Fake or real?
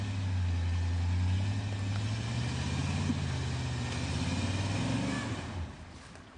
real